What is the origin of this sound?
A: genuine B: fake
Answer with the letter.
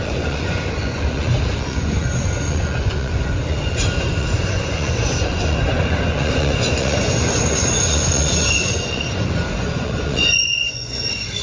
B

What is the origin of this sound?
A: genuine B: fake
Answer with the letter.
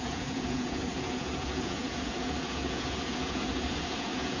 B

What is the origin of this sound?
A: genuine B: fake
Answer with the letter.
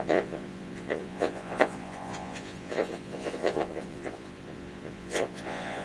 B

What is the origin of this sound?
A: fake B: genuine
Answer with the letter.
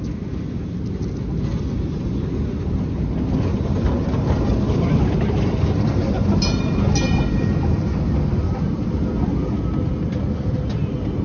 B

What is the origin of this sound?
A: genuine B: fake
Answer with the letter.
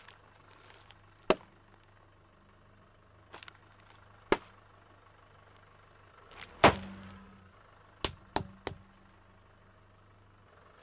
A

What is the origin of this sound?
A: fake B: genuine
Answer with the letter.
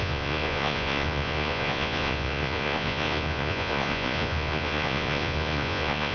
A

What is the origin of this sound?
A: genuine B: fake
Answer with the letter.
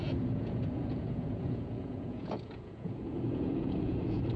B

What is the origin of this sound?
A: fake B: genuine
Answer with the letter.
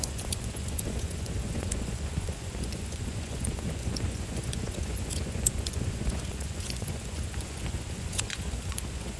A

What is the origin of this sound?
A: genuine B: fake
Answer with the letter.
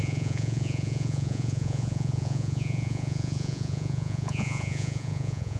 B